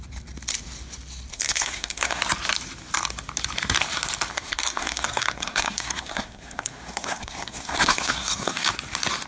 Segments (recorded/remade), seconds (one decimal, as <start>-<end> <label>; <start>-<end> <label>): 0.0-1.3 recorded; 1.3-2.2 remade; 2.2-4.3 recorded; 4.3-8.7 remade; 8.7-9.3 recorded